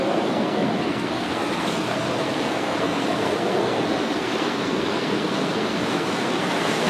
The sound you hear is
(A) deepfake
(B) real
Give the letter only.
A